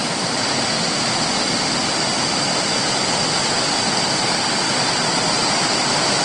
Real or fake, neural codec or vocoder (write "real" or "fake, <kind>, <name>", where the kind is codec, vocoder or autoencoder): fake, vocoder, BigVGAN v2